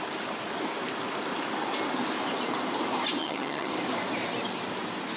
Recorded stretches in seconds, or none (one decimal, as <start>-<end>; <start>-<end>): 0.0-3.2; 3.7-5.2